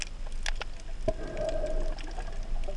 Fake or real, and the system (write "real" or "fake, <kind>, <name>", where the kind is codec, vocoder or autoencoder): real